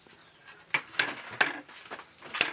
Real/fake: real